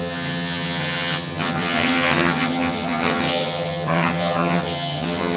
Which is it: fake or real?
fake